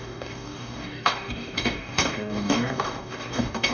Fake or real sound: fake